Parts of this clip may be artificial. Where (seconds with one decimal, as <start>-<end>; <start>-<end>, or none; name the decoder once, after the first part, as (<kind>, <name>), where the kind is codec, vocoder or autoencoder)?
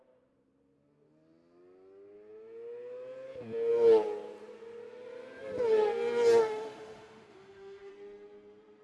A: 6.4-7.9 (autoencoder, DAC-VAE)